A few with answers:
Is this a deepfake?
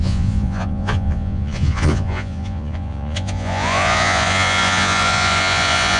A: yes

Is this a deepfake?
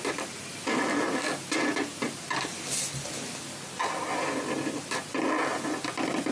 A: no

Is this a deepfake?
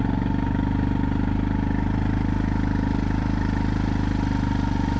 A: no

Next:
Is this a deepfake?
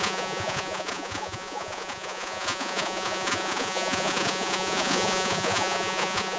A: yes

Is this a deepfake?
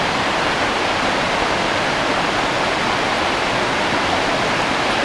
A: no